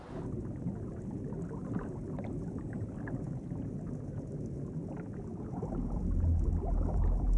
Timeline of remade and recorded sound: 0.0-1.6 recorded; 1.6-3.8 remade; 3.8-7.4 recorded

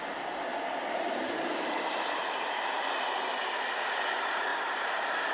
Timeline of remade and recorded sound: 0.0-0.5 recorded; 0.5-3.3 remade; 3.3-4.5 recorded; 4.5-5.3 remade